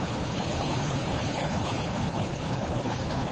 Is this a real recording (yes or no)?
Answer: no